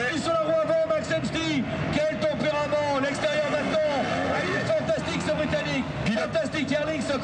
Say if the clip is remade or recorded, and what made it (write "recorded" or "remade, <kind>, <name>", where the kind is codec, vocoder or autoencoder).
recorded